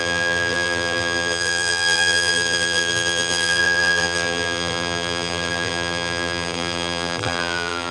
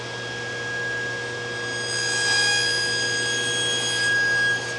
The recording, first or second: second